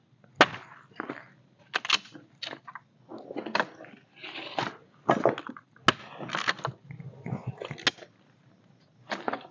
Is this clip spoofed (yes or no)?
no